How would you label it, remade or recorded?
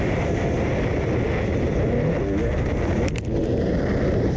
recorded